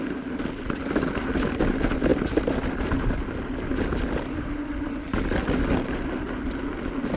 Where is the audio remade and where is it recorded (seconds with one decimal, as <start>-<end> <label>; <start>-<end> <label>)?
0.0-7.2 recorded